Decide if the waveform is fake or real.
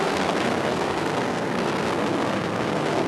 fake